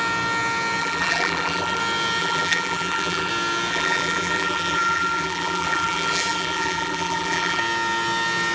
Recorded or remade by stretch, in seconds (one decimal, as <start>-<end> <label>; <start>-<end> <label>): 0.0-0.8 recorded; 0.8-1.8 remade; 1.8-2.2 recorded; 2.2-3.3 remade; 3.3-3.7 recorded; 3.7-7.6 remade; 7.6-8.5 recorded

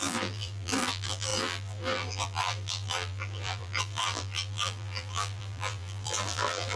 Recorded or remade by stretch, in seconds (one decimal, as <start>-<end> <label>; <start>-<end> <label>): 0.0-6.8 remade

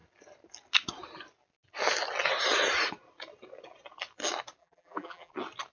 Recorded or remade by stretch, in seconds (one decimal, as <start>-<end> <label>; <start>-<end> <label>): 0.0-4.6 recorded; 4.6-5.3 remade; 5.3-5.7 recorded

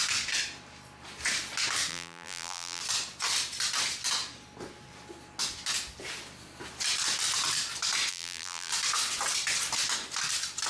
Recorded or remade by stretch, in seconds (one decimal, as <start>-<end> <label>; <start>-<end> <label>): 0.0-1.9 recorded; 1.9-2.8 remade; 2.8-8.1 recorded; 8.1-8.7 remade; 8.7-10.7 recorded

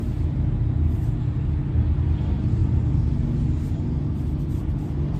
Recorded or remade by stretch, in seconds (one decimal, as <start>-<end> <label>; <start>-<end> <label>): 0.0-5.2 recorded

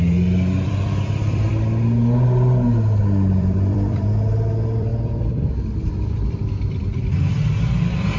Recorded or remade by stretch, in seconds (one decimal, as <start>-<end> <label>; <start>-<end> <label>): 0.0-1.5 remade; 1.5-3.0 recorded; 3.0-8.2 remade